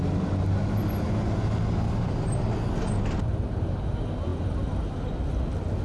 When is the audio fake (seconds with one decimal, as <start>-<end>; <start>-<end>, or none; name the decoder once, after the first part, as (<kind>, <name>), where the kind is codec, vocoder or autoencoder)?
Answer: none